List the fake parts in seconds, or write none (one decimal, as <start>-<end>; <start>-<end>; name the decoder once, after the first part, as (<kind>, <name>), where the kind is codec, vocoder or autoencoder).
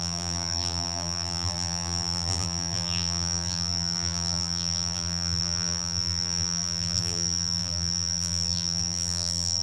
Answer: 0.0-9.6 (vocoder, BigVGAN v2)